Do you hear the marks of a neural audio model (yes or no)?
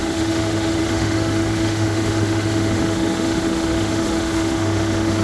yes